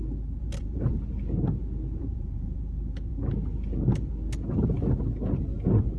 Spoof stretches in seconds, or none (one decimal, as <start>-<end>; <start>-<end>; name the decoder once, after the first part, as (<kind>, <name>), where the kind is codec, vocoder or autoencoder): 0.4-0.9 (vocoder, Vocos); 2.0-2.6